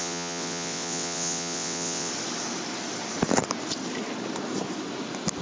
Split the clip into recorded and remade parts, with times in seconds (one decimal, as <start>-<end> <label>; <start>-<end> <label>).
0.0-2.1 remade; 2.1-5.4 recorded